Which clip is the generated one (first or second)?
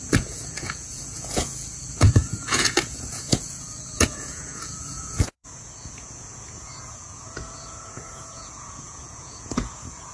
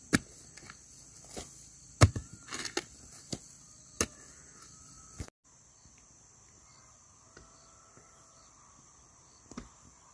first